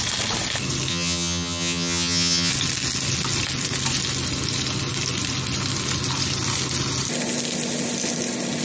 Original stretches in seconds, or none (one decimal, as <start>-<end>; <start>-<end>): 0.0-0.9; 2.5-8.6